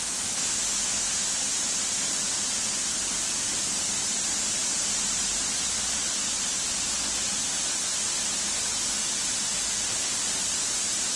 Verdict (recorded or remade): recorded